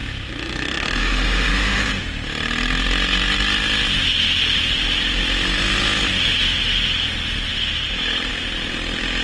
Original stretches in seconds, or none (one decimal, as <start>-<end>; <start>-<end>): 2.0-9.2